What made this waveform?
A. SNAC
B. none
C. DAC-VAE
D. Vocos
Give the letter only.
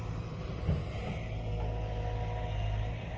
B